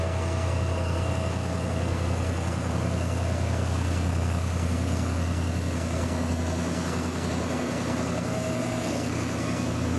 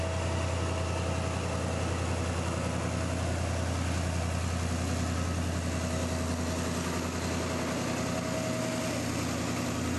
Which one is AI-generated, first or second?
first